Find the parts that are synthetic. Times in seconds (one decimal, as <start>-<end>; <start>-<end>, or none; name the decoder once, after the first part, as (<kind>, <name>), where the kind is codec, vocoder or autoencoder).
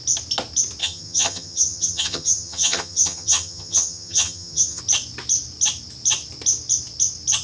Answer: 0.8-4.8 (vocoder, HiFi-GAN)